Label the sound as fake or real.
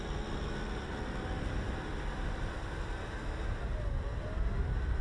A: real